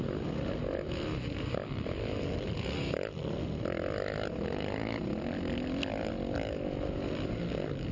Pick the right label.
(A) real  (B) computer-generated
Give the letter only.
A